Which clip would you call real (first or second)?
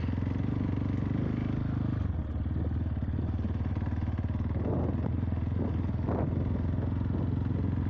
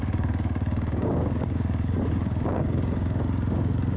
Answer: first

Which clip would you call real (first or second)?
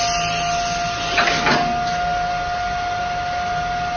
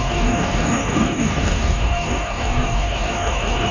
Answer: first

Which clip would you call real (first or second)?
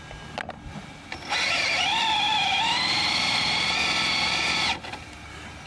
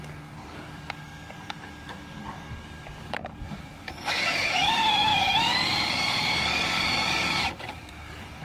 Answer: first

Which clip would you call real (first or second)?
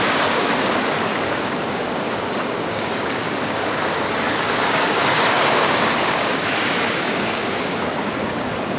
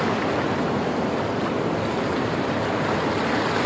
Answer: second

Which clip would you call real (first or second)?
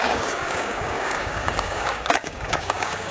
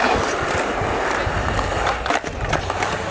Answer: second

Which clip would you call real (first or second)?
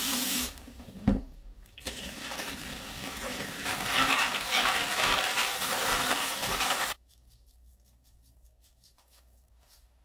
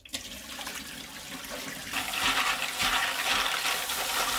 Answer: second